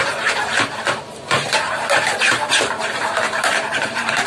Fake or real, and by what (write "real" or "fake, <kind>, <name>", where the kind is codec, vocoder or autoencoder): fake, vocoder, BigVGAN v2